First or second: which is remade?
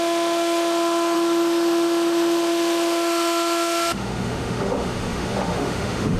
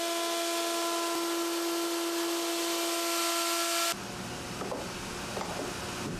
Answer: first